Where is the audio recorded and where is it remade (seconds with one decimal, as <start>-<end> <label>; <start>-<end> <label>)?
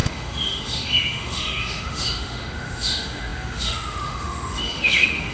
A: 0.0-5.3 remade